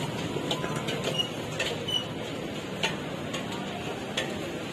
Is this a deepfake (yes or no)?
no